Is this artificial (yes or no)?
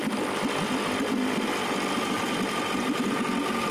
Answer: no